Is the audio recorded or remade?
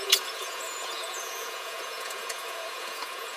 remade